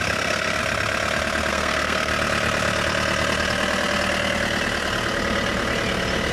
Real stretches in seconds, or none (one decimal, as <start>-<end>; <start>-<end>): 0.6-1.5; 2.1-6.3